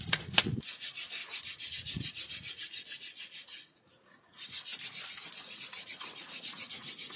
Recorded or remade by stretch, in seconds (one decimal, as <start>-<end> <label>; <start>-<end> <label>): 0.0-1.2 remade; 1.2-1.7 recorded; 1.7-4.7 remade; 4.7-5.4 recorded; 5.4-7.2 remade